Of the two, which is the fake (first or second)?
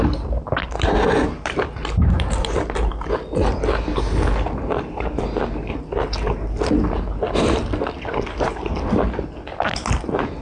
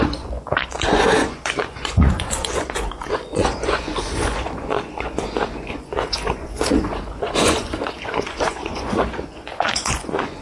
second